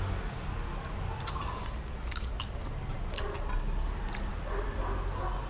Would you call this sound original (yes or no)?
yes